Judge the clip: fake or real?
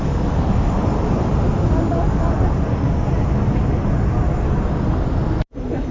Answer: real